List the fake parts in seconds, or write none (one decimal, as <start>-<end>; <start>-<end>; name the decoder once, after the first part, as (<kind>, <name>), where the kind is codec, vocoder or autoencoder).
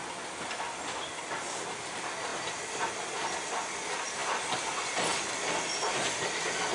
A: none